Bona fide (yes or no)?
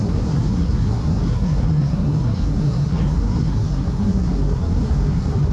no